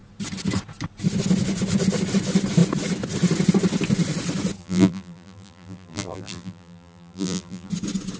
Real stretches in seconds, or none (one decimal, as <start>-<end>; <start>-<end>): 0.0-4.6; 7.7-8.2